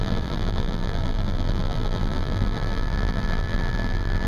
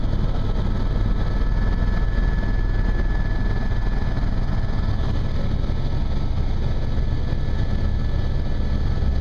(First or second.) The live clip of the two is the second